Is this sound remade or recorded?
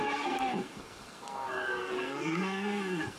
remade